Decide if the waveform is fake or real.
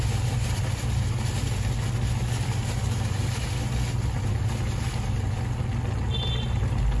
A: real